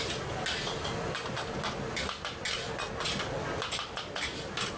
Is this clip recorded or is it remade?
recorded